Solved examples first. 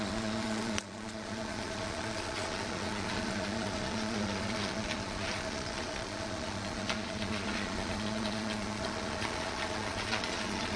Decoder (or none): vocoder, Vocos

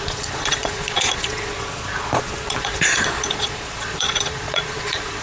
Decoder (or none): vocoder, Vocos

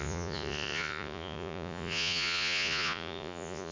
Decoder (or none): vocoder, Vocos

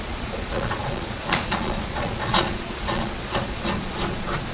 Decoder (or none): vocoder, Vocos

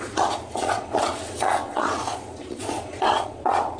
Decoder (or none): vocoder, Vocos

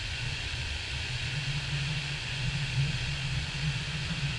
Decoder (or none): vocoder, Vocos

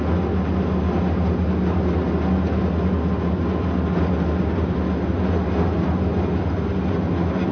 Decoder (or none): none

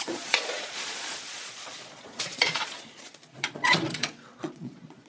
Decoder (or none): vocoder, Vocos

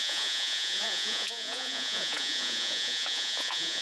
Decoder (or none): vocoder, Vocos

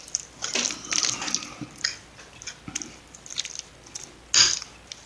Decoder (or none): none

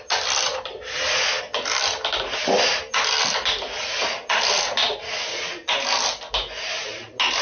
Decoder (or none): none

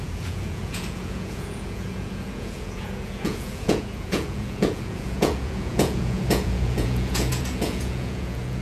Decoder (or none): vocoder, Vocos